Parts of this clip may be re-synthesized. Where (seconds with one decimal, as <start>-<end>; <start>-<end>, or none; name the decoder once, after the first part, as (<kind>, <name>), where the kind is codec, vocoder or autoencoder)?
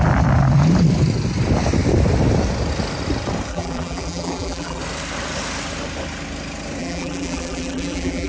3.5-4.8 (vocoder, BigVGAN v2); 6.8-8.3